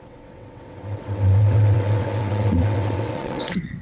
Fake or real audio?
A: fake